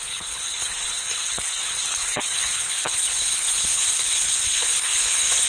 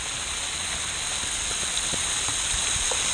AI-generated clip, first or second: first